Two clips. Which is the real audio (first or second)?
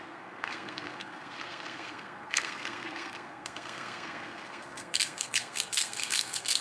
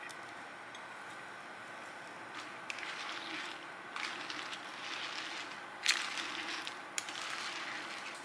second